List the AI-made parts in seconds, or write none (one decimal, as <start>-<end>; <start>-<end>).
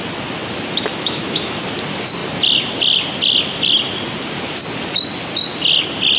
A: 0.9-1.6